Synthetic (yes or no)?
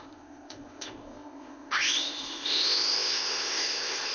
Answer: yes